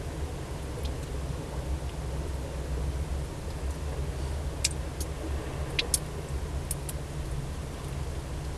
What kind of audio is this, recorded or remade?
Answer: recorded